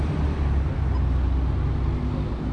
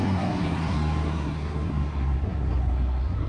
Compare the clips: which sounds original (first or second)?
first